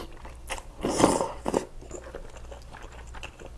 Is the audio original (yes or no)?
yes